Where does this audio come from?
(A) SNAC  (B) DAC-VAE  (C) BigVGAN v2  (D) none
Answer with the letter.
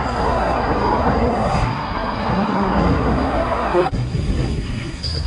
A